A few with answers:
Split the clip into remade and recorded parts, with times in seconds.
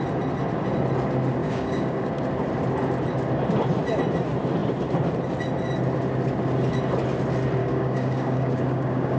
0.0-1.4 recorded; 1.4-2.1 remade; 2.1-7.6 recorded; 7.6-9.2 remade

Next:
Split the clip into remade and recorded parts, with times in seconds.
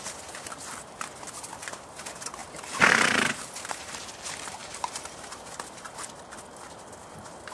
0.0-2.4 recorded; 2.4-4.1 remade; 4.1-4.6 recorded; 4.6-5.4 remade; 5.4-7.5 recorded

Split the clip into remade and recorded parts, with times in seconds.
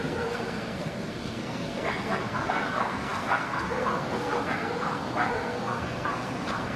0.0-6.8 remade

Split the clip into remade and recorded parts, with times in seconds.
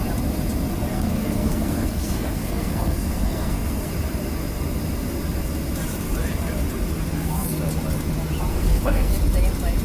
0.0-0.9 recorded; 0.9-3.9 remade; 3.9-7.1 recorded; 7.1-7.6 remade; 7.6-8.5 recorded; 8.5-9.1 remade; 9.1-9.8 recorded